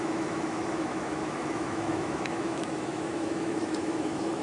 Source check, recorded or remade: remade